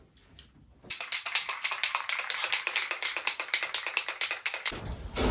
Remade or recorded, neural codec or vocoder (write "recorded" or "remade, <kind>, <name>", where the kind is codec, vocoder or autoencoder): recorded